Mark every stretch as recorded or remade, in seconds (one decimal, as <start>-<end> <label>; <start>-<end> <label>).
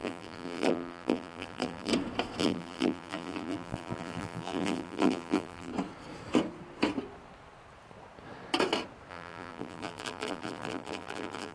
0.0-1.9 remade; 1.9-2.4 recorded; 2.4-5.7 remade; 5.7-9.1 recorded; 9.1-11.5 remade